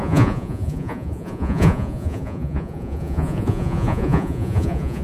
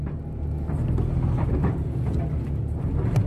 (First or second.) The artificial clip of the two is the first